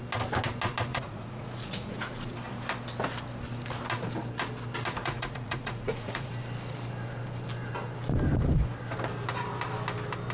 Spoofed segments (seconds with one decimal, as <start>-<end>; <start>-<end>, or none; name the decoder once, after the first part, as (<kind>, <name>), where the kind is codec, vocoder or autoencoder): 0.9-2.3 (vocoder, Vocos); 5.0-6.3